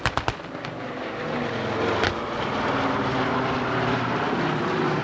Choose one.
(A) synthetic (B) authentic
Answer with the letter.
B